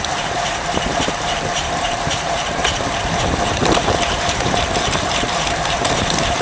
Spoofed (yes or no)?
yes